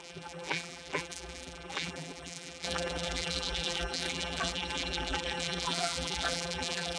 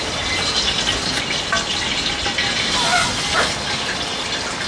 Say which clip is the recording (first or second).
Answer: second